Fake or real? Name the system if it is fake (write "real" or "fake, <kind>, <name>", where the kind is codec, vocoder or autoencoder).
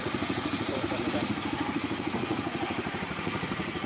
fake, vocoder, Vocos